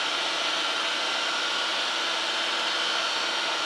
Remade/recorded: recorded